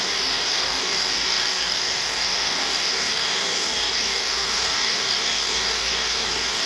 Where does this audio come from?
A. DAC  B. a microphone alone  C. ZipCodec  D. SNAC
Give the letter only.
A